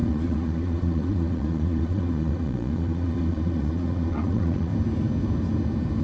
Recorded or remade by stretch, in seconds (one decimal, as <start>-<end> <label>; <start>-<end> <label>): 0.0-4.7 remade; 4.7-6.0 recorded